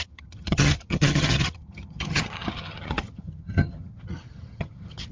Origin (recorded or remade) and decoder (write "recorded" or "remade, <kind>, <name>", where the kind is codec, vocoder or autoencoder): remade, vocoder, HiFi-GAN